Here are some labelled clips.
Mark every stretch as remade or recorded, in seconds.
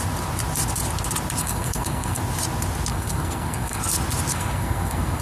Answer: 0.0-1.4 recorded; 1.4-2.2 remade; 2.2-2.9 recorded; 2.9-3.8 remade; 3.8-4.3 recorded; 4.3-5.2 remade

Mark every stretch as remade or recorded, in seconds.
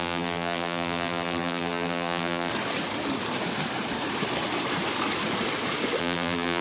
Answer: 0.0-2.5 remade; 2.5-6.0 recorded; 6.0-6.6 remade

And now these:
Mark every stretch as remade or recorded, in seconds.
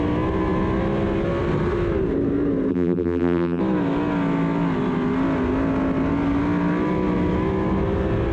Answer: 0.0-2.7 recorded; 2.7-3.6 remade; 3.6-8.3 recorded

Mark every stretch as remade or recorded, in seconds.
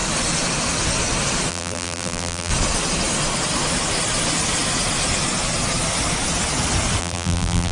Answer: 0.0-1.5 recorded; 1.5-2.5 remade; 2.5-7.0 recorded; 7.0-7.7 remade